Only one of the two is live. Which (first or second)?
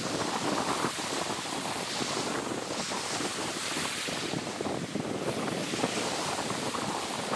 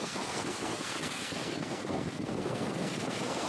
first